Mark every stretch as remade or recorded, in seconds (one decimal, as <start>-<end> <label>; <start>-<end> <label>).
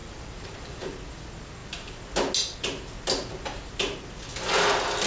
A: 0.0-0.8 remade; 0.8-5.1 recorded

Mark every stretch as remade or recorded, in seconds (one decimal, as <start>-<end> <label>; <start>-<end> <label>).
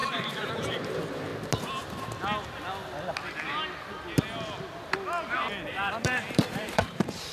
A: 0.0-1.3 remade; 1.3-5.7 recorded; 5.7-7.3 remade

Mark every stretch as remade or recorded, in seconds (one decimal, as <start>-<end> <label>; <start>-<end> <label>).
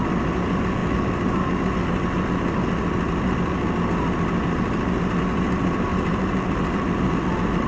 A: 0.0-5.9 recorded; 5.9-7.1 remade; 7.1-7.7 recorded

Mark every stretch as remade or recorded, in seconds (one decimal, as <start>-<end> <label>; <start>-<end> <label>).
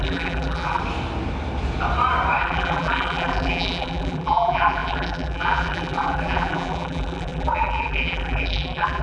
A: 0.0-0.8 remade; 0.8-2.4 recorded; 2.4-9.0 remade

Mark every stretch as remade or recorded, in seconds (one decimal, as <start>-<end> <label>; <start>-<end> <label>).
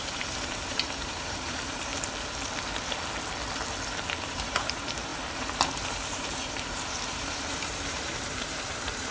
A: 0.0-1.9 remade; 1.9-4.2 recorded; 4.2-9.1 remade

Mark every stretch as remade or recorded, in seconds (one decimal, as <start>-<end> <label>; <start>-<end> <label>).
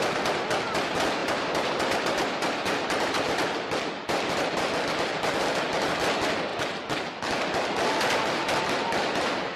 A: 0.0-1.2 recorded; 1.2-5.3 remade; 5.3-9.6 recorded